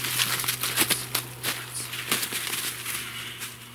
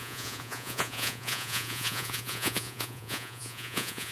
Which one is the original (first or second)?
first